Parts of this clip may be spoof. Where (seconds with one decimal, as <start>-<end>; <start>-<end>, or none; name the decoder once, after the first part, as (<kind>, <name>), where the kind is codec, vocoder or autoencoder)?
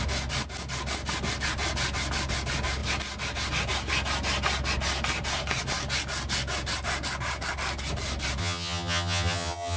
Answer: 8.4-9.8 (vocoder, HiFi-GAN)